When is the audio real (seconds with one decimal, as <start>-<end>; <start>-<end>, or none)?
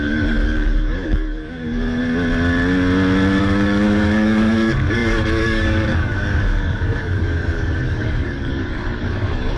2.0-3.4